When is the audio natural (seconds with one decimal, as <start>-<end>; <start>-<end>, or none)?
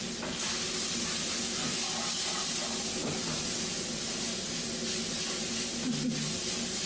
0.0-6.9